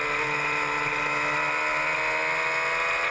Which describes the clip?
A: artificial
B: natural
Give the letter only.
B